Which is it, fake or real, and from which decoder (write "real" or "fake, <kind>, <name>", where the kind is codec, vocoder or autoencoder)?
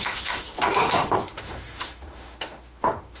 fake, autoencoder, DAC-VAE